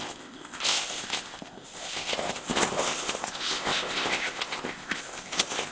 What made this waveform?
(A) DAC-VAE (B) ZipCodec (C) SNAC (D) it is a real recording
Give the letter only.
B